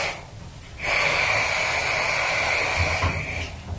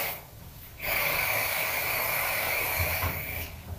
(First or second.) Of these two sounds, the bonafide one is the first